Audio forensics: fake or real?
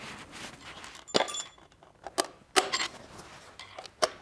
real